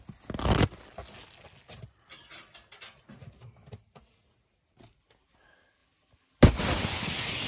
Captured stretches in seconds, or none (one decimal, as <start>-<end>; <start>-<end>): 0.0-7.5